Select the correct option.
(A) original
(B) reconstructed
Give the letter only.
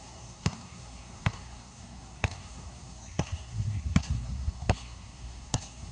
B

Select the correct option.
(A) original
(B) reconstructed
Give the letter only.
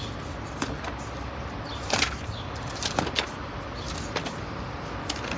A